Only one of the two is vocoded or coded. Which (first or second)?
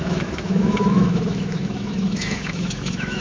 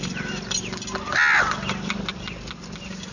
first